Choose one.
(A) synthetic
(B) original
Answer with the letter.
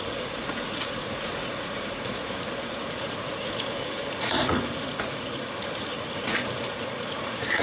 A